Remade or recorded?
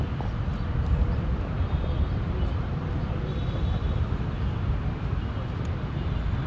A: recorded